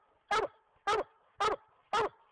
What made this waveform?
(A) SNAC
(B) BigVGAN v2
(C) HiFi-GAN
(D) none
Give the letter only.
D